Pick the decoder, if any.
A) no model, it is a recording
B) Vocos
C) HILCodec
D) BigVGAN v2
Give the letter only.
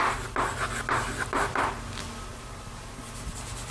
A